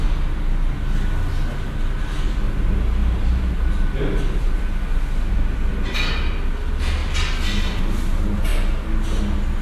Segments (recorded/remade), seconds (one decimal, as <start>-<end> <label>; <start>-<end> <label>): 0.0-9.6 recorded